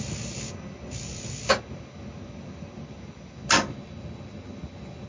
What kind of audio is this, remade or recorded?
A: recorded